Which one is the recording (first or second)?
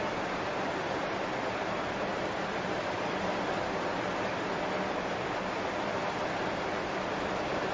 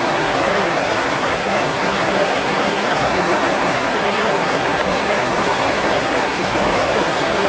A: first